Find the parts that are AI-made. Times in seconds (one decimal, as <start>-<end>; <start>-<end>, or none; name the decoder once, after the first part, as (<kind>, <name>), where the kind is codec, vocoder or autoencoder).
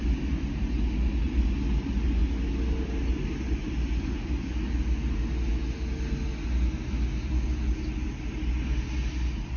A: none